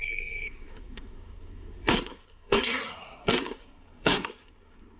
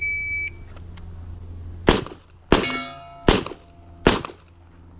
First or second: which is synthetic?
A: first